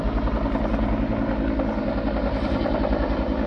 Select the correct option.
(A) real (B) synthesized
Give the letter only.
A